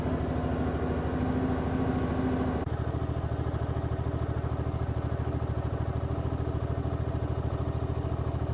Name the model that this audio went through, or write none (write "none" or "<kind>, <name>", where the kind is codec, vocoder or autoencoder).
none